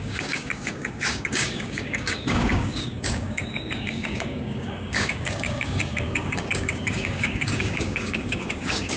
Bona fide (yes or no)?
no